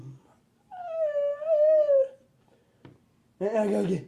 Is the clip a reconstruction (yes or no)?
no